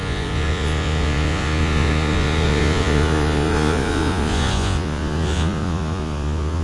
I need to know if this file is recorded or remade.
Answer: remade